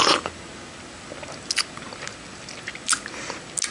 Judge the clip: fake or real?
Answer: real